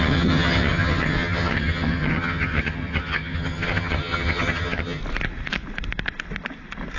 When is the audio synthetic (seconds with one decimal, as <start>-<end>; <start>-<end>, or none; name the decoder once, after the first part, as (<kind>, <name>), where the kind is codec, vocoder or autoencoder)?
0.0-5.0 (vocoder, HiFi-GAN)